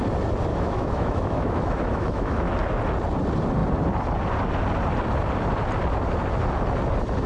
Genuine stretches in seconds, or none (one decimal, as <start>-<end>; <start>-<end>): 0.0-0.5; 2.5-7.3